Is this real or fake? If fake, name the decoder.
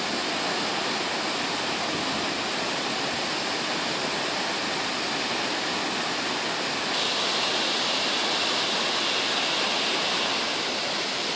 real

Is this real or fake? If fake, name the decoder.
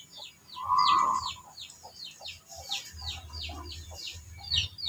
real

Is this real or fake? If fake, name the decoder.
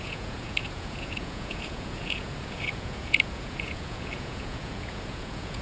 fake, vocoder, Vocos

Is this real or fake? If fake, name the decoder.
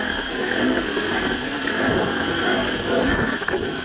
fake, codec, SNAC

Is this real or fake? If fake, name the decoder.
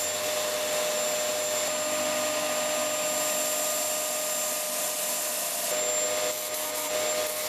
real